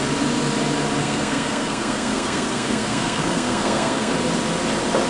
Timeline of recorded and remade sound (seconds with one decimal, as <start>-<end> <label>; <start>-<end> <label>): 0.0-1.0 recorded; 1.0-4.1 remade; 4.1-5.1 recorded